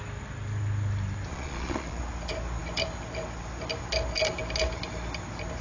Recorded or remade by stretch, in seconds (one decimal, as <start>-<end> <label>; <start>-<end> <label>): 0.0-1.3 recorded; 1.3-2.0 remade; 2.0-5.6 recorded